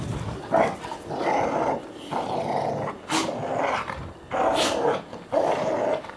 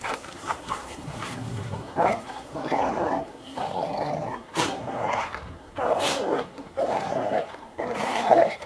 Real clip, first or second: first